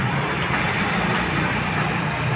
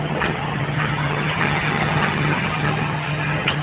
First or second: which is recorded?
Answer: first